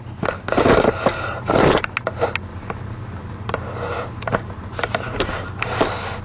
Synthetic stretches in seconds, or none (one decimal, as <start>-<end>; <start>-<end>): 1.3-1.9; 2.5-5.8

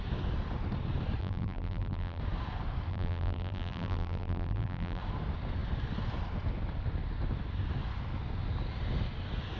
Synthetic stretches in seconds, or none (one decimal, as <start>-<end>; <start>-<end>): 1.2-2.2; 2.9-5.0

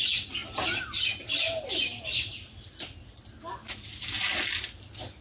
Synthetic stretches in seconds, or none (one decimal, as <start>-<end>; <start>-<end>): none

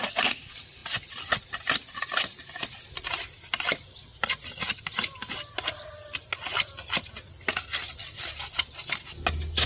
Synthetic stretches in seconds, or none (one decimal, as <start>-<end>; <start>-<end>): 2.1-3.0

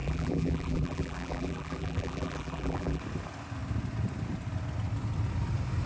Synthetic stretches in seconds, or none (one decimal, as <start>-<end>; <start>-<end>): 0.0-3.0

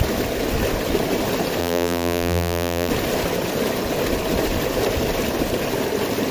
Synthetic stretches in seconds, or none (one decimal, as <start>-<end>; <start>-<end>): 1.6-2.9

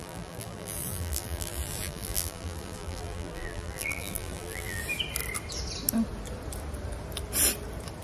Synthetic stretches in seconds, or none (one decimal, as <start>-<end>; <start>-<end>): 0.0-4.8